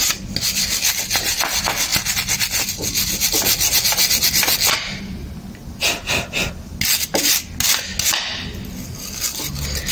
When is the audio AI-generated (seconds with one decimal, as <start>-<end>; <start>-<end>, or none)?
none